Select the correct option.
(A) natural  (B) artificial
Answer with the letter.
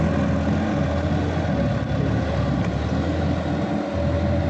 A